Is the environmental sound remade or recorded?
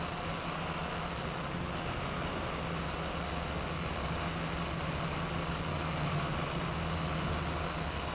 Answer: recorded